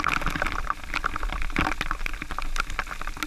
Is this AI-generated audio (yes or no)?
no